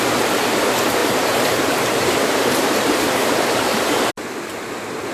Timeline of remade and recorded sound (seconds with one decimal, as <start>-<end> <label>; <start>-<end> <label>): 0.0-1.0 recorded; 1.0-4.1 remade; 4.1-5.1 recorded